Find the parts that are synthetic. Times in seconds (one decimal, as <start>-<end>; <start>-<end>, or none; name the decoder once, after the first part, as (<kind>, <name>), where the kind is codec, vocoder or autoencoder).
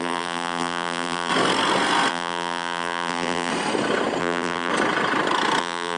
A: 0.0-1.3 (vocoder, BigVGAN v2); 2.1-3.5; 4.2-4.7; 5.6-6.0